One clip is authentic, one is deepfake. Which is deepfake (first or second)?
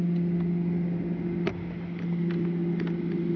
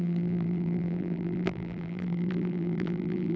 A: second